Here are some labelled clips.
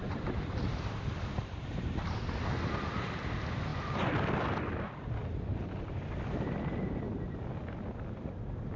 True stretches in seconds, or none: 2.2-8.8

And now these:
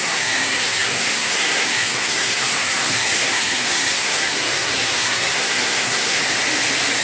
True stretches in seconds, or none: 6.2-7.0

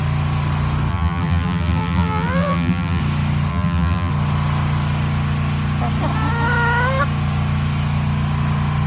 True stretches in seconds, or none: 0.0-0.9; 3.0-3.5; 4.1-8.9

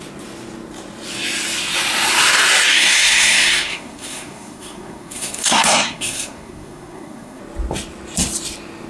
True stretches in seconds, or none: 0.0-2.7; 7.4-8.9

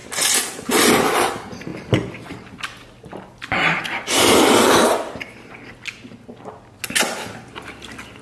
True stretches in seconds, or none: 0.9-4.8; 5.5-8.2

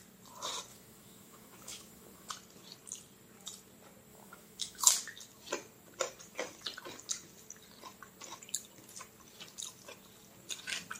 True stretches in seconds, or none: 0.0-0.7; 2.3-4.1; 4.9-11.0

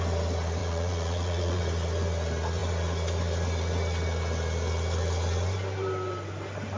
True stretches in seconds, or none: 0.0-0.6; 1.6-6.8